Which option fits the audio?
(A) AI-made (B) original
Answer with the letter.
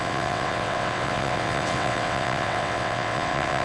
A